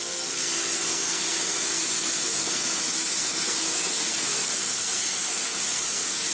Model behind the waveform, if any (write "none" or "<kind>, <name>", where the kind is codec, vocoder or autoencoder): codec, SNAC